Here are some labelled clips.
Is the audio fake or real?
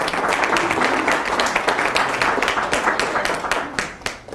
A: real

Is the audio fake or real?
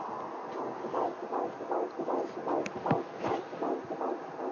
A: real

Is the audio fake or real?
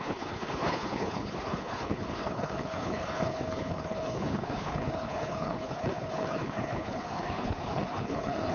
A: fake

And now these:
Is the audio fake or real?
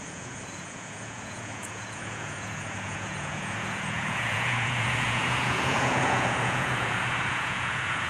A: fake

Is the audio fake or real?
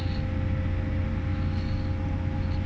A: real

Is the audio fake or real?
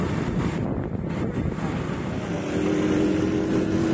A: real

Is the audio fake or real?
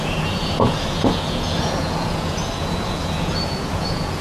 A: fake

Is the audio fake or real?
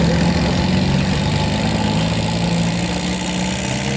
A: real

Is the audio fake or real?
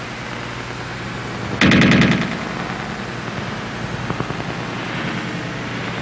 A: real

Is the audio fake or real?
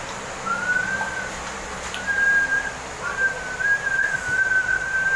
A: real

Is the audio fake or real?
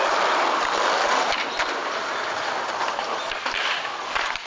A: fake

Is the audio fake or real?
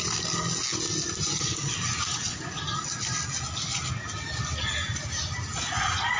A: real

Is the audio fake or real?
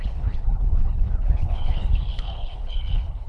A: fake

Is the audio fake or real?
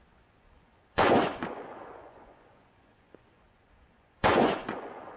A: fake